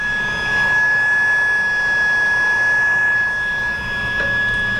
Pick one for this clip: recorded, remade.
recorded